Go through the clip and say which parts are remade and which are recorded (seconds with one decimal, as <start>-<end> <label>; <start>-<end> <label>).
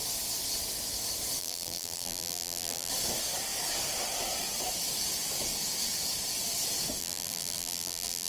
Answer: 0.0-1.4 recorded; 1.4-2.9 remade; 2.9-7.0 recorded; 7.0-8.3 remade